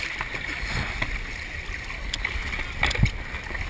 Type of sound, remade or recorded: recorded